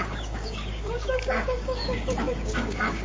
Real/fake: fake